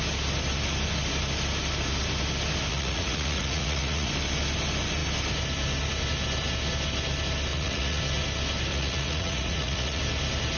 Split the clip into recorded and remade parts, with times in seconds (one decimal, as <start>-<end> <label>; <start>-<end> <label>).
0.0-2.7 recorded; 2.7-4.1 remade; 4.1-7.5 recorded; 7.5-8.0 remade; 8.0-8.7 recorded; 8.7-10.0 remade; 10.0-10.6 recorded